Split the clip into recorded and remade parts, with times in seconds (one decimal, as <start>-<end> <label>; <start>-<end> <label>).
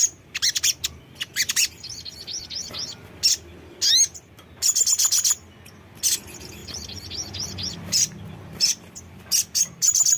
0.0-10.2 recorded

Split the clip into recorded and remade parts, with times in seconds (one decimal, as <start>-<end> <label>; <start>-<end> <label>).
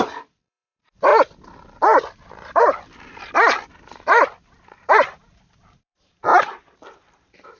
0.0-1.1 remade; 1.1-4.9 recorded; 4.9-6.3 remade; 6.3-6.9 recorded; 6.9-7.6 remade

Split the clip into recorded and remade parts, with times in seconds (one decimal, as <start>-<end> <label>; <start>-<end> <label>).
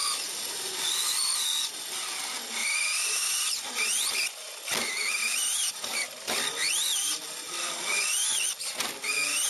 0.0-2.6 recorded; 2.6-3.6 remade; 3.6-5.2 recorded; 5.2-5.7 remade; 5.7-9.5 recorded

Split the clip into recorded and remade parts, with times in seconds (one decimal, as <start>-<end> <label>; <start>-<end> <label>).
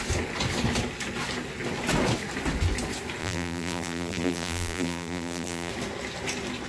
0.0-3.2 recorded; 3.2-5.7 remade; 5.7-6.7 recorded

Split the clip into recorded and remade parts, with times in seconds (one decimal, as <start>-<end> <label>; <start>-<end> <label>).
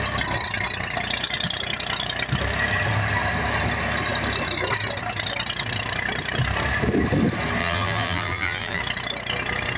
0.0-7.6 recorded; 7.6-8.8 remade; 8.8-9.8 recorded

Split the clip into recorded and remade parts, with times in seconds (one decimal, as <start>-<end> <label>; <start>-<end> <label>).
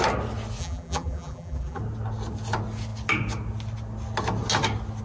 0.0-0.6 recorded; 0.6-1.8 remade; 1.8-5.0 recorded